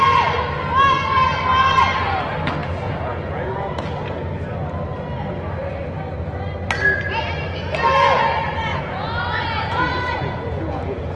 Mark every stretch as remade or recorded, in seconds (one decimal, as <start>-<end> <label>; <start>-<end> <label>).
0.0-2.6 recorded; 2.6-4.2 remade; 4.2-8.7 recorded; 8.7-11.2 remade